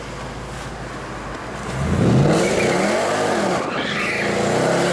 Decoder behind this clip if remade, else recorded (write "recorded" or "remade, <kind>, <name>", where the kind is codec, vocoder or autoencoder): recorded